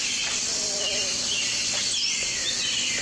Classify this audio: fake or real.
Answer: real